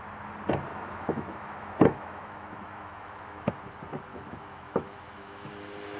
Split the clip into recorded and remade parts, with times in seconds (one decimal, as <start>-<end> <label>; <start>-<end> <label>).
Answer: 0.0-0.7 recorded; 0.7-3.5 remade; 3.5-4.1 recorded; 4.1-5.5 remade; 5.5-6.0 recorded